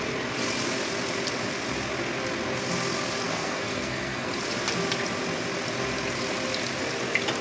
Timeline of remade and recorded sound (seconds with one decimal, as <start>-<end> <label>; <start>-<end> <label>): 0.0-3.2 recorded; 3.2-4.3 remade; 4.3-7.4 recorded